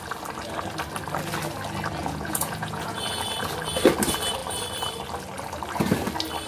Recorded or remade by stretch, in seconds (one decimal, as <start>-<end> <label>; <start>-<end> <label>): 0.0-2.0 recorded; 2.0-3.2 remade; 3.2-6.5 recorded

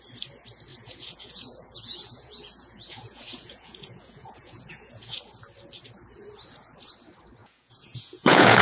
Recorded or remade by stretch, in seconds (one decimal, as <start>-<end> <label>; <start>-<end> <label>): 0.0-0.7 recorded; 0.7-5.2 remade; 5.2-7.4 recorded; 7.4-8.6 remade

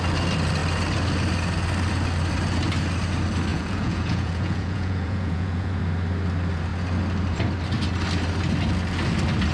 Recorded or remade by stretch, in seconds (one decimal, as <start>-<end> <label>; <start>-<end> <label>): 0.0-3.5 recorded; 3.5-5.8 remade; 5.8-9.5 recorded

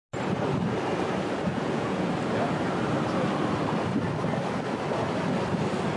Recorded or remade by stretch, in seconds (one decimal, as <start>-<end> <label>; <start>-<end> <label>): 0.0-1.5 recorded; 1.5-2.1 remade; 2.1-6.0 recorded

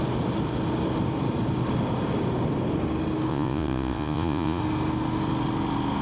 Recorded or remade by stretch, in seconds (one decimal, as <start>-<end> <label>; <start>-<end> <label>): 0.0-3.3 recorded; 3.3-4.6 remade; 4.6-6.0 recorded

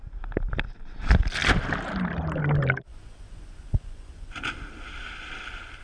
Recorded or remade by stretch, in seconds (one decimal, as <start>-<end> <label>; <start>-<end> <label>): 0.0-2.9 recorded; 2.9-4.4 remade; 4.4-5.8 recorded

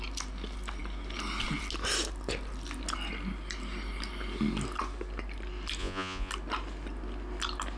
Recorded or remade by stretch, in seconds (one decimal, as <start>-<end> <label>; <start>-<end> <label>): 0.0-5.8 recorded; 5.8-6.3 remade; 6.3-7.8 recorded